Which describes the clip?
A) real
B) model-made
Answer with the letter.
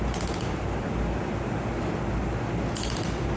A